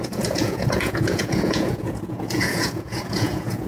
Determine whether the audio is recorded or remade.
remade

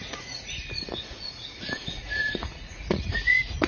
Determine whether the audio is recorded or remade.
remade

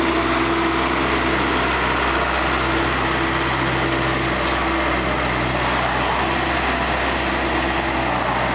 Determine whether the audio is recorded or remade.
recorded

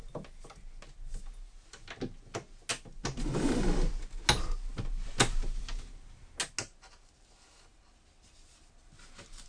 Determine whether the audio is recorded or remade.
recorded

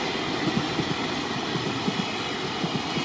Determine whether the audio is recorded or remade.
recorded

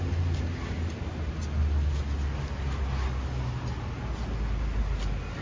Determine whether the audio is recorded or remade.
recorded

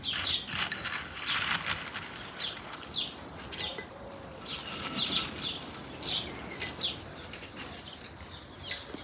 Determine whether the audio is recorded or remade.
recorded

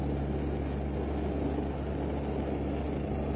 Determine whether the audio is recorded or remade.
recorded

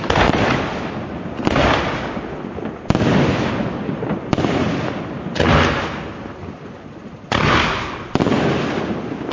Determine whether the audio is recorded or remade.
recorded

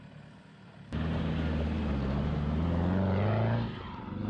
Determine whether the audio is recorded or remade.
recorded